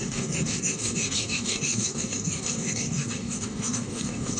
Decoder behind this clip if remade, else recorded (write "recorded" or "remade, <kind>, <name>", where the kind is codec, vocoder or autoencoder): remade, codec, DAC